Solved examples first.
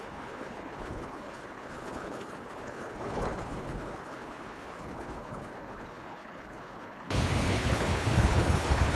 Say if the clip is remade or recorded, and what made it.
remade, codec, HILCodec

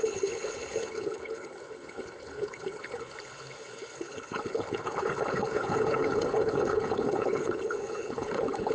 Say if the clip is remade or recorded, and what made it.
remade, codec, HILCodec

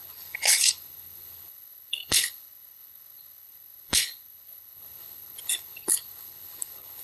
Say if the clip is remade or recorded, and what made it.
remade, codec, HILCodec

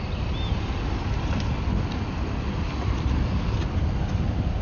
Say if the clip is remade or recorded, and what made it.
recorded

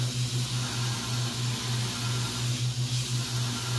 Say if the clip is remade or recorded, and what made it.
recorded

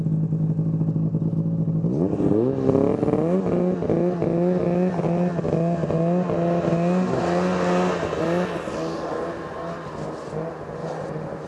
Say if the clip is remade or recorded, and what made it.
recorded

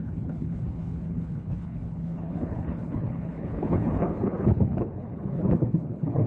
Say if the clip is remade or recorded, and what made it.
remade, codec, HILCodec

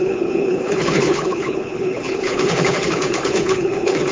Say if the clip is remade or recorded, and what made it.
remade, codec, HILCodec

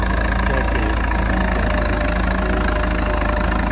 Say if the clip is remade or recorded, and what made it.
recorded